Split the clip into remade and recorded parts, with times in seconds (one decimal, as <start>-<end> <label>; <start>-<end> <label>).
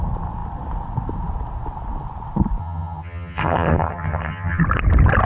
0.0-2.6 recorded; 2.6-4.6 remade; 4.6-5.2 recorded